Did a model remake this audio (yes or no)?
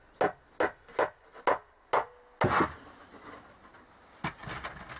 no